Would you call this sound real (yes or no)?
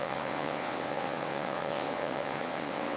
no